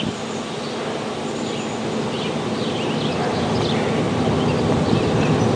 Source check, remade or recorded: recorded